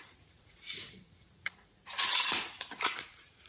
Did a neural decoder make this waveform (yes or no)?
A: yes